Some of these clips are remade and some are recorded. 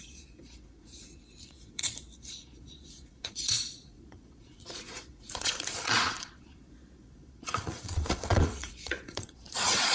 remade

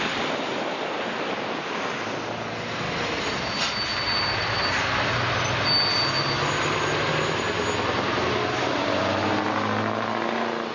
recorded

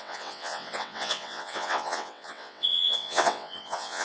remade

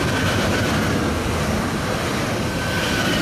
recorded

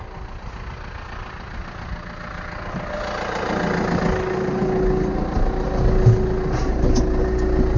recorded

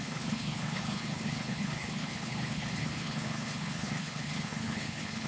remade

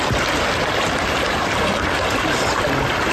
recorded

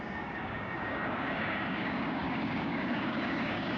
remade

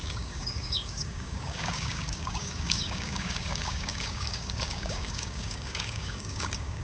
remade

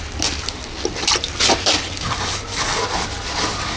recorded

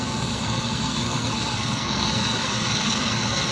remade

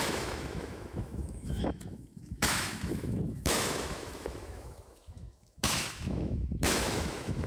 remade